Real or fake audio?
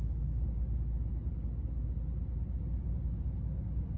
real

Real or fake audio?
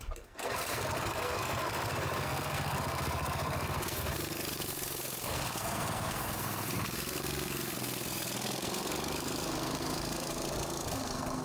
fake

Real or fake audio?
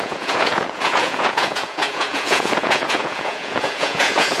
fake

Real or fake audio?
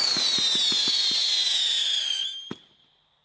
real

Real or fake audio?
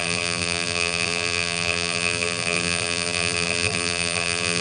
fake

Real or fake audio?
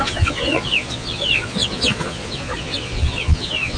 fake